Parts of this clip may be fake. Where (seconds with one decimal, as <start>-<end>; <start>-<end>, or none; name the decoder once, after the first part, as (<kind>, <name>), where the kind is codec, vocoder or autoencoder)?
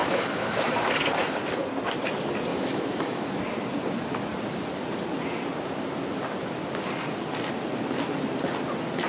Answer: 0.0-0.7 (autoencoder, DAC-VAE); 2.5-3.4